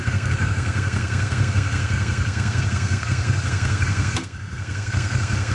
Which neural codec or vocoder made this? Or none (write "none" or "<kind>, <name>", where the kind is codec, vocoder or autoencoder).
codec, SNAC